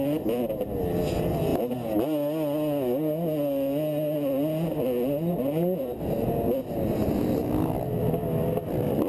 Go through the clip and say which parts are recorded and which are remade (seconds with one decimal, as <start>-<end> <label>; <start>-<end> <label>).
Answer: 0.0-9.1 recorded